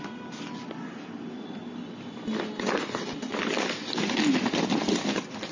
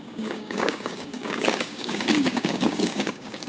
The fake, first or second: second